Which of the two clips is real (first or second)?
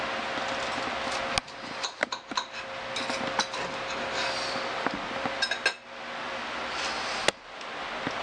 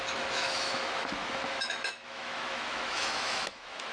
first